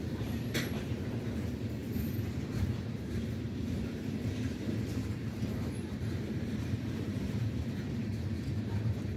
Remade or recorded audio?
remade